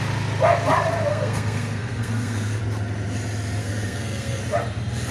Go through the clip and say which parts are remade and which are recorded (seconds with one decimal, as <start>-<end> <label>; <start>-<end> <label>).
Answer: 0.0-1.1 recorded; 1.1-2.6 remade; 2.6-3.6 recorded; 3.6-4.4 remade; 4.4-5.1 recorded